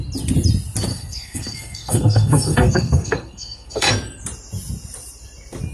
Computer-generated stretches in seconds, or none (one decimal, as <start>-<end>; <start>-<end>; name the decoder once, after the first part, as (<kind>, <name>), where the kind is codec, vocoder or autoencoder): 0.9-3.9 (codec, SNAC)

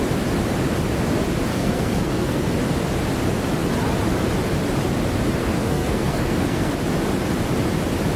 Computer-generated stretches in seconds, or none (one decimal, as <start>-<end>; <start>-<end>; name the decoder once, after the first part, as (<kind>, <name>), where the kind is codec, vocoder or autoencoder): 1.5-2.5 (codec, SNAC); 5.4-6.7

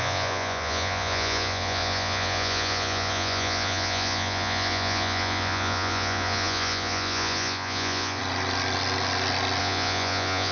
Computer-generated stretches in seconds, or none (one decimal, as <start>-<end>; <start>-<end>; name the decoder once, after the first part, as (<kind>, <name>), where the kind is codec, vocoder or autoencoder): 0.0-8.2 (vocoder, Vocos); 9.6-10.5

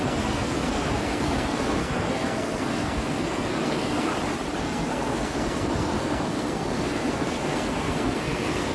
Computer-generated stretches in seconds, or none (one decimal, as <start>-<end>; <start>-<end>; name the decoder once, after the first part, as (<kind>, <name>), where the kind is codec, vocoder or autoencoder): 0.0-4.1 (codec, SNAC); 4.6-8.7

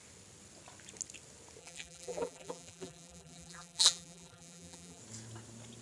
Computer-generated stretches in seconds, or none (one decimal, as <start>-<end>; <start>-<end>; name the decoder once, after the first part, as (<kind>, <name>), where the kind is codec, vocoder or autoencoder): 1.6-5.0 (vocoder, BigVGAN v2)

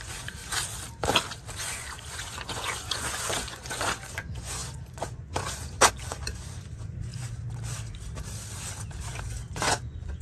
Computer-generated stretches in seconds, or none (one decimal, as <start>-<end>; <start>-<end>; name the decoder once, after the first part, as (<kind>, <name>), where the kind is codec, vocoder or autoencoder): 0.0-0.4 (vocoder, Vocos); 1.6-7.1; 9.4-10.2

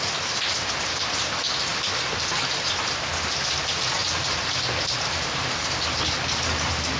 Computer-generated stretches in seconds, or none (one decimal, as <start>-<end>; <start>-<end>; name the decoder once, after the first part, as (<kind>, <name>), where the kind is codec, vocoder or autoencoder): none

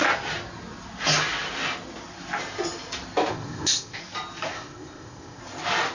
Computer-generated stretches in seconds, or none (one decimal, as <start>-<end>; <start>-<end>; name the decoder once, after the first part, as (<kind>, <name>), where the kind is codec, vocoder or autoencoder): 3.3-4.0 (codec, ZipCodec); 4.5-5.4